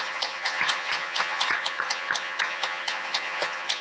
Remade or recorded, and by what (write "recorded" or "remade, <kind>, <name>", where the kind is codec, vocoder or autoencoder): remade, vocoder, HiFi-GAN